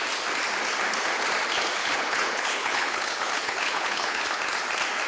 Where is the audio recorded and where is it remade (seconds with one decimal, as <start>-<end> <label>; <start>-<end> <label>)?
0.0-1.8 recorded; 1.8-4.4 remade; 4.4-5.1 recorded